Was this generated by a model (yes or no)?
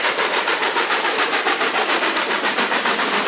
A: yes